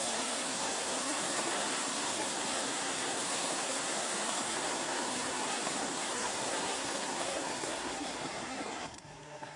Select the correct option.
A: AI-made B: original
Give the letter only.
A